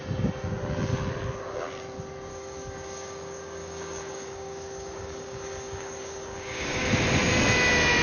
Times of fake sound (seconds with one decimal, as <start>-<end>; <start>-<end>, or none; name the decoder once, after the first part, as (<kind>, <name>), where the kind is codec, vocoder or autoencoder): 2.3-6.9 (codec, DAC)

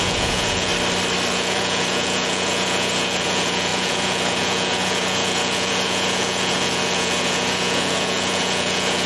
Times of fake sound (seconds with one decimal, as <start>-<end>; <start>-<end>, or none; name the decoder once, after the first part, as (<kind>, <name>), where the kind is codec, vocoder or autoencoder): 0.0-0.7 (vocoder, Vocos); 1.3-9.1

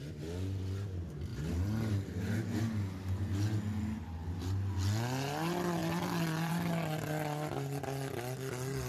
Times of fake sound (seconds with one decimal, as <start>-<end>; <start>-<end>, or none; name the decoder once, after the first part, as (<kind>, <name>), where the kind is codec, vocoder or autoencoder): none

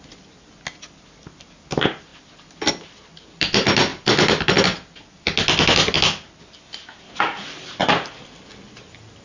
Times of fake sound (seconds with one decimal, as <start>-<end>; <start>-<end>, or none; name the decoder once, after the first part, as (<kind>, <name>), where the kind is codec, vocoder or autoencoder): none